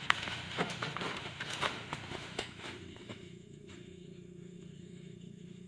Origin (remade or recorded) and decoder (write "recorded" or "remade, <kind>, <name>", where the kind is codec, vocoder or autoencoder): remade, autoencoder, DAC-VAE